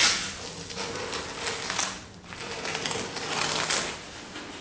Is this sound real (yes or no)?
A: yes